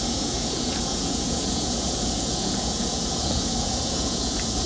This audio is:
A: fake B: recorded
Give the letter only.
A